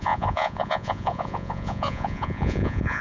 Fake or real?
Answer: fake